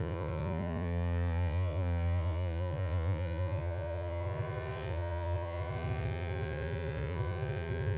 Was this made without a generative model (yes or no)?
no